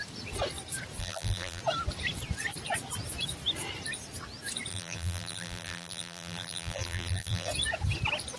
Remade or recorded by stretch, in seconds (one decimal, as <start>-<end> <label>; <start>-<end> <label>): 0.0-1.0 recorded; 1.0-1.6 remade; 1.6-4.7 recorded; 4.7-7.5 remade; 7.5-8.4 recorded